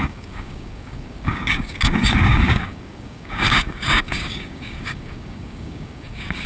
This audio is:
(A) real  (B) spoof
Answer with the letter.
B